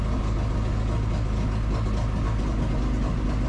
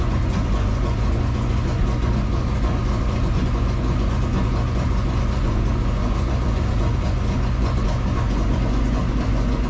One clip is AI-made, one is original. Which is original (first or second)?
first